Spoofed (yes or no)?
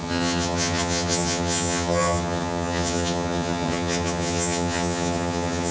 yes